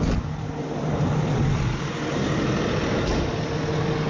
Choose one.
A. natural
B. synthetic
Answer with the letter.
A